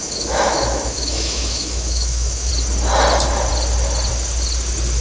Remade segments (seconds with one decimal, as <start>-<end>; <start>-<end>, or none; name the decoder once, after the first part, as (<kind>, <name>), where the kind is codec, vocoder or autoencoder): 0.0-2.5 (autoencoder, DAC-VAE)